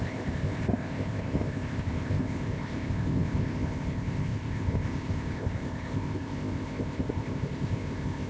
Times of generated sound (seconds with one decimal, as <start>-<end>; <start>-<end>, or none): 0.0-8.3